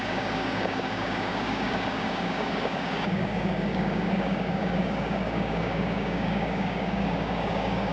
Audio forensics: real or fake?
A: fake